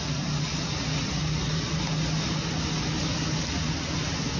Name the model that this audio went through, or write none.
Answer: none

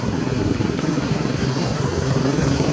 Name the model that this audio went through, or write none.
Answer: codec, SNAC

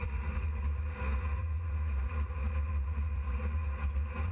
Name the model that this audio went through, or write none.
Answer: vocoder, Vocos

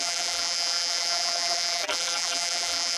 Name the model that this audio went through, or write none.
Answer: vocoder, BigVGAN v2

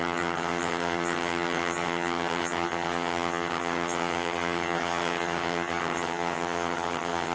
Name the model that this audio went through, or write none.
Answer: vocoder, HiFi-GAN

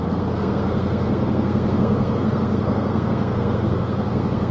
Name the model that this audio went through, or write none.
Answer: codec, SNAC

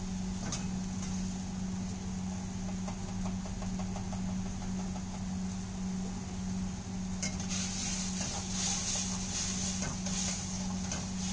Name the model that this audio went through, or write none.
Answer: none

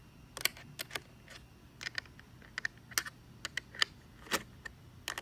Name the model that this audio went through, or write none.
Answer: none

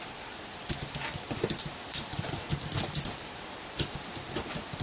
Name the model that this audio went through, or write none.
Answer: none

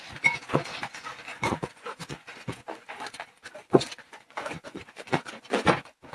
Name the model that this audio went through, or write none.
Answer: vocoder, Vocos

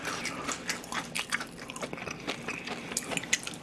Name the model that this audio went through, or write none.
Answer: none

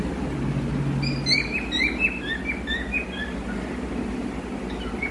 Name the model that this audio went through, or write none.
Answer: none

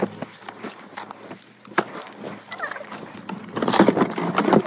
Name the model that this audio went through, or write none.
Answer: none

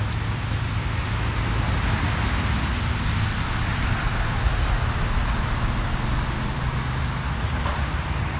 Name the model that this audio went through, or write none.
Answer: none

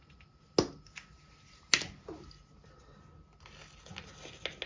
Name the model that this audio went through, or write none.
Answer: none